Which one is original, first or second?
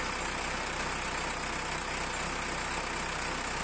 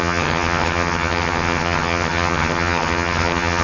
first